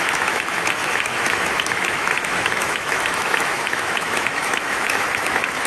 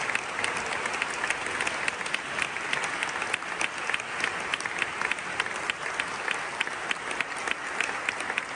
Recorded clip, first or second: second